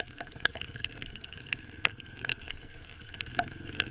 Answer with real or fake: fake